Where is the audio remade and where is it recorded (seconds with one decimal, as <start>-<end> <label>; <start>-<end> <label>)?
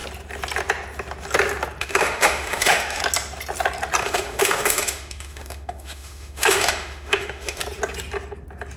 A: 0.0-1.8 recorded; 1.8-3.0 remade; 3.0-4.0 recorded; 4.0-7.6 remade; 7.6-8.8 recorded